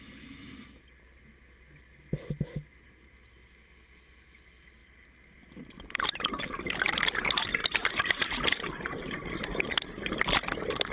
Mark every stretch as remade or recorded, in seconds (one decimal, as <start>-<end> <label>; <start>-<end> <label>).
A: 0.0-7.6 recorded; 7.6-9.2 remade; 9.2-10.9 recorded